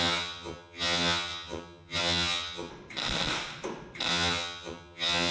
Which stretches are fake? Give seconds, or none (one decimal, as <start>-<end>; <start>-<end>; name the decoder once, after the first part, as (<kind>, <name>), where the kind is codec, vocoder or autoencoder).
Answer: 0.0-2.7 (vocoder, HiFi-GAN); 4.1-5.3